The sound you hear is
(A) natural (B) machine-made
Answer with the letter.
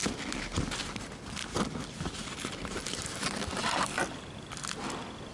A